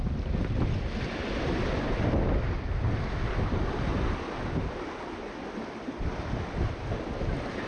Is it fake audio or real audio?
real